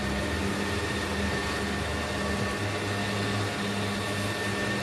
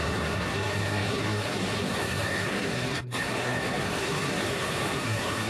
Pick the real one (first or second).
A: first